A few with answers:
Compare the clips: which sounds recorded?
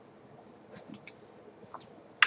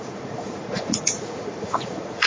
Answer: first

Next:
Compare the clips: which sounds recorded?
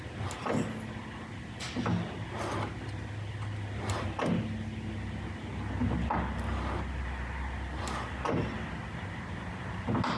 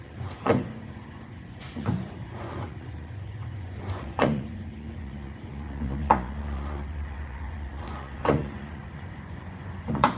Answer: first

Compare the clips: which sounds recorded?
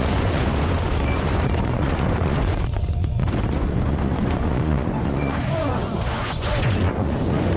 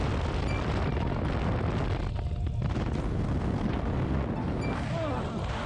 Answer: second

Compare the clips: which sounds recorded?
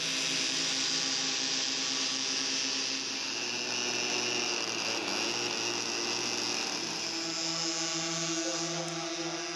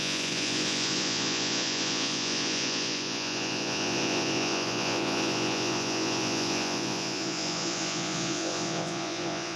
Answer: first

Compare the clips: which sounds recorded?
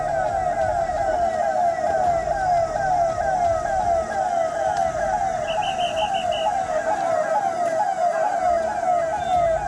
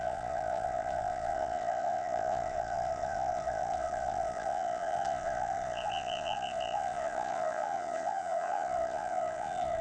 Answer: first